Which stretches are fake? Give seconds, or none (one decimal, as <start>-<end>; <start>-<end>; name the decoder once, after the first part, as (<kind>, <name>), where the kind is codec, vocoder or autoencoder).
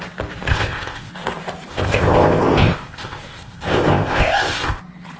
0.5-1.1 (codec, ZipCodec); 1.7-4.8